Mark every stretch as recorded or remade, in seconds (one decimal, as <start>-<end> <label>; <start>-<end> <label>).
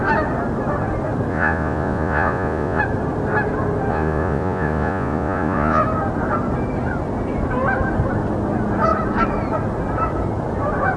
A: 0.0-1.3 recorded; 1.3-2.8 remade; 2.8-3.9 recorded; 3.9-5.8 remade; 5.8-11.0 recorded